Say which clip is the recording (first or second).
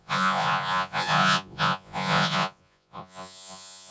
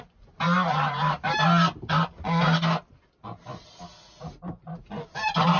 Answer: second